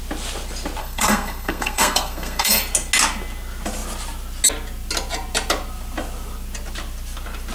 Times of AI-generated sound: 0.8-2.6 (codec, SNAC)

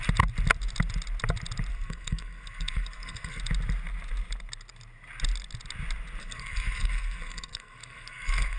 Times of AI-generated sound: 1.7-3.4 (codec, SNAC); 6.2-8.6

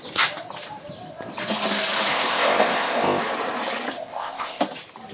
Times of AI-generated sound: 2.1-3.2 (codec, ZipCodec); 3.9-4.6

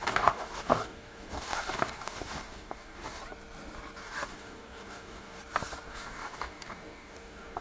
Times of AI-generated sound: 0.0-3.2 (codec, DAC); 4.0-5.4; 5.9-7.6